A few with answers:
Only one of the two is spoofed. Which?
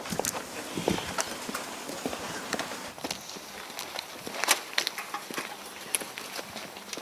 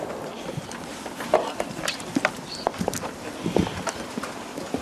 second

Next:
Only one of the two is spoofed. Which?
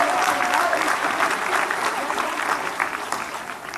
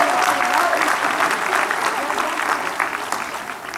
first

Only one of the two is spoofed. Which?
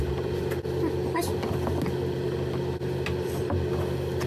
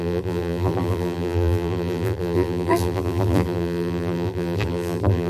second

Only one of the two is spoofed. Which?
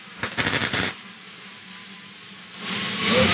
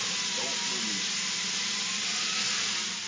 first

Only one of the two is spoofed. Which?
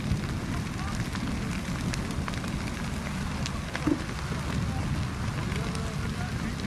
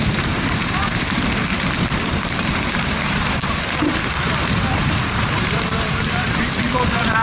second